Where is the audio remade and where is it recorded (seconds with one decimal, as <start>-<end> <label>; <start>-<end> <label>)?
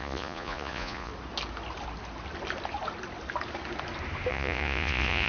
0.0-1.1 remade; 1.1-4.3 recorded; 4.3-5.3 remade